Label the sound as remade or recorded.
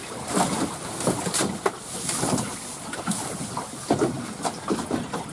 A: recorded